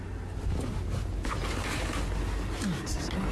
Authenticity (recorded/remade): recorded